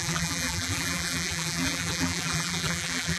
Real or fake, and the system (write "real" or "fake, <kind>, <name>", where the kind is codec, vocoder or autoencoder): fake, vocoder, BigVGAN v2